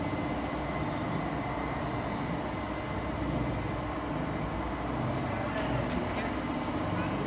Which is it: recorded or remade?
recorded